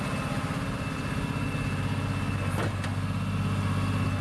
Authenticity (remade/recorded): recorded